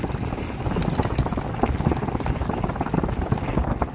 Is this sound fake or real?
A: real